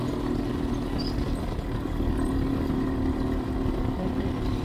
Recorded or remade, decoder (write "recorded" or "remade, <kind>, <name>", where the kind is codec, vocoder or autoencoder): recorded